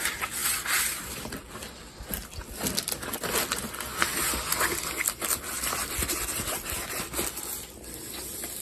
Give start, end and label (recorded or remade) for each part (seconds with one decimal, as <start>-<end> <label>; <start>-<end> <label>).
0.0-8.6 recorded

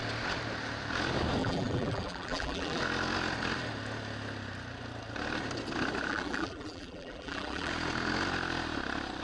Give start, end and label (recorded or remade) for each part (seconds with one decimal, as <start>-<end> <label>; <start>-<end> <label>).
0.0-1.4 recorded; 1.4-2.8 remade; 2.8-6.1 recorded; 6.1-7.7 remade; 7.7-9.2 recorded

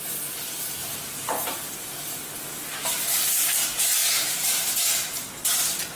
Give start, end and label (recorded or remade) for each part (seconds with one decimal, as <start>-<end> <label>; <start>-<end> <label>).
0.0-0.8 recorded; 0.8-1.3 remade; 1.3-2.7 recorded; 2.7-3.5 remade; 3.5-4.0 recorded; 4.0-5.3 remade; 5.3-6.0 recorded

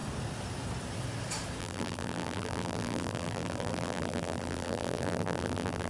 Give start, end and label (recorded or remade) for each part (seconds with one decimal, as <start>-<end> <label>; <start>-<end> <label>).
0.0-1.6 recorded; 1.6-5.9 remade

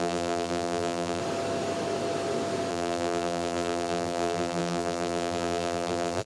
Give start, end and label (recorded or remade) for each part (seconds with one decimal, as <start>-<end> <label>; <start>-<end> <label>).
0.0-1.2 remade; 1.2-2.7 recorded; 2.7-6.3 remade